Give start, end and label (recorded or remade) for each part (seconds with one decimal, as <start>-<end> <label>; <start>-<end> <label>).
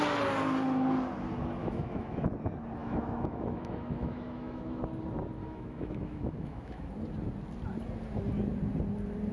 0.0-1.6 recorded; 1.6-2.3 remade; 2.3-2.8 recorded; 2.8-4.8 remade; 4.8-5.4 recorded; 5.4-6.9 remade; 6.9-9.3 recorded